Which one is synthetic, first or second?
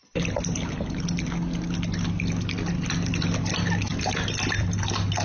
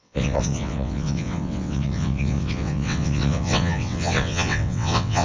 second